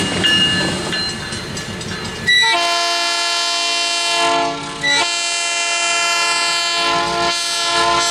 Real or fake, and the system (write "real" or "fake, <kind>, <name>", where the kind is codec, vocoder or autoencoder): real